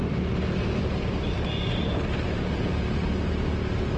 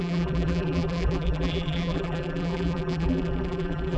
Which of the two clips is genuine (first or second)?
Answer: first